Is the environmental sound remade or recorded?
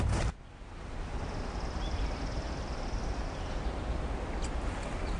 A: remade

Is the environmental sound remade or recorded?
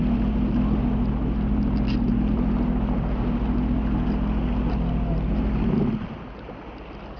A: recorded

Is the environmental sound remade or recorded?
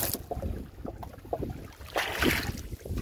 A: recorded